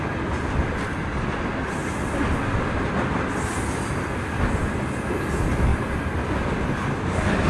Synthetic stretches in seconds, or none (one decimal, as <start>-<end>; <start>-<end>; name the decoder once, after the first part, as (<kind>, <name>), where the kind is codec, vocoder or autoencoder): 5.7-6.3 (vocoder, BigVGAN v2)